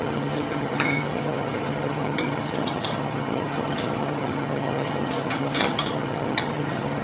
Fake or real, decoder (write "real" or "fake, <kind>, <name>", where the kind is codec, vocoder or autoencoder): fake, vocoder, HiFi-GAN